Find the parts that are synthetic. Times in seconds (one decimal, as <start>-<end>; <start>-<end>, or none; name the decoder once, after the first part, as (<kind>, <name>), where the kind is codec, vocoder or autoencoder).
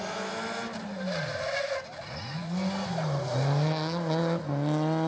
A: none